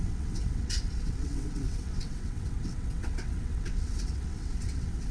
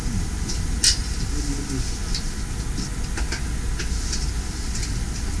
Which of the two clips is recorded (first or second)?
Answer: second